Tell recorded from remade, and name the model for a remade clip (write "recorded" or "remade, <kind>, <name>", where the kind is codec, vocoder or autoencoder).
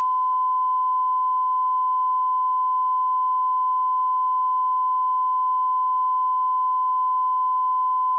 recorded